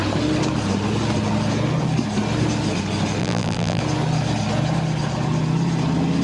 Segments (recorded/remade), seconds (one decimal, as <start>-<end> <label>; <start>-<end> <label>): 0.0-3.2 recorded; 3.2-3.8 remade; 3.8-6.2 recorded

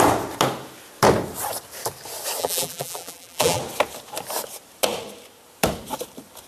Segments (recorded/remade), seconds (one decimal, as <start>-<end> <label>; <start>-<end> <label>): 0.0-2.4 recorded; 2.4-3.6 remade; 3.6-6.5 recorded

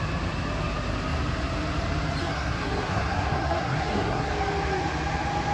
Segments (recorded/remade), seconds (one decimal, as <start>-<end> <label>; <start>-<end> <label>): 0.0-2.2 recorded; 2.2-4.3 remade; 4.3-5.5 recorded

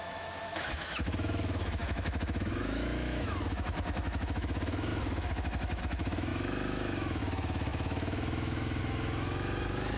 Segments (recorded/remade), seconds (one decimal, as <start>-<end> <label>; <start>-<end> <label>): 0.0-10.0 remade

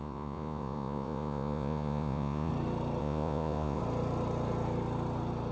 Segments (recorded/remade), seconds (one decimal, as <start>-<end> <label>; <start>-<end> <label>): 0.0-2.5 remade; 2.5-3.0 recorded; 3.0-3.8 remade; 3.8-5.5 recorded

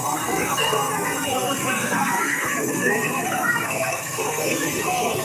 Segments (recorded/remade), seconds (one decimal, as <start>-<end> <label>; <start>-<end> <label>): 0.0-5.2 remade

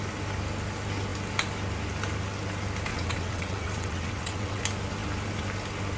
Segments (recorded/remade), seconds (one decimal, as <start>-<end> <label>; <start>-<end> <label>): 0.0-2.9 recorded; 2.9-4.6 remade; 4.6-6.0 recorded